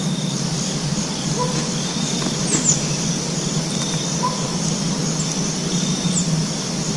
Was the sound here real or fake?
real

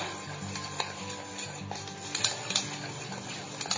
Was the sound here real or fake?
real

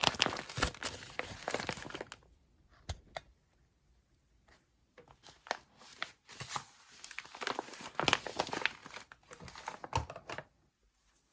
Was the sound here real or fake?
real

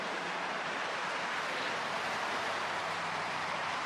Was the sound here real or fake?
fake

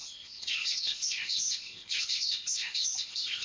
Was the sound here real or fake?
fake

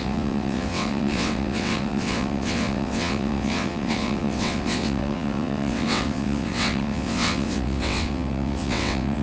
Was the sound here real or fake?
fake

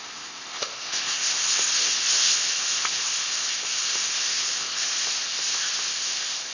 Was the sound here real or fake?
fake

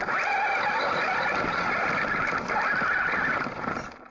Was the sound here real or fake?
real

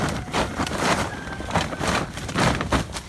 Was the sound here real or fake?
fake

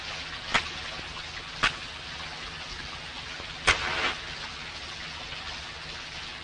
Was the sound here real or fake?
real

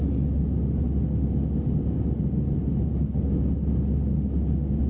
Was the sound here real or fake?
real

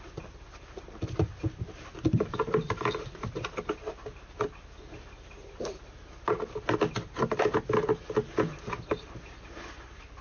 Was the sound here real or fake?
real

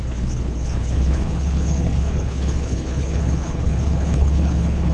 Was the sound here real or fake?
fake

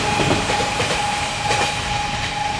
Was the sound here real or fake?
fake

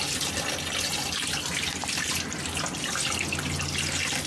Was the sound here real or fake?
real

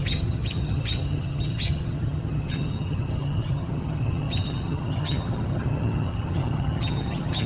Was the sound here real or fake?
fake